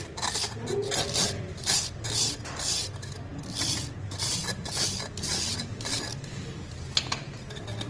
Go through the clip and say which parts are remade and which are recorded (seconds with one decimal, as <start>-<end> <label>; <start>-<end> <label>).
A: 0.0-7.9 recorded